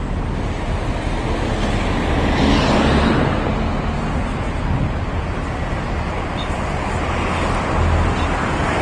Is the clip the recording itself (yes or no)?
yes